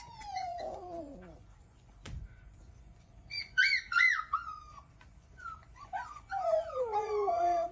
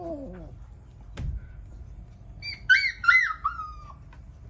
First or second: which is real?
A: second